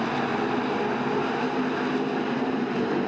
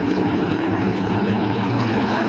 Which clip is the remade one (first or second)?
second